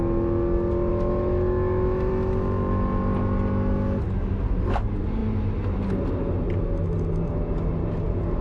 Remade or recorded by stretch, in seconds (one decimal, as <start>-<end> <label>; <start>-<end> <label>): 0.0-0.9 recorded; 0.9-2.1 remade; 2.1-8.4 recorded